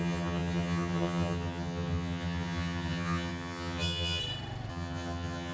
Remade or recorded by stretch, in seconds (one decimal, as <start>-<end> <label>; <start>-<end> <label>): 0.0-4.2 remade; 4.2-4.7 recorded; 4.7-5.5 remade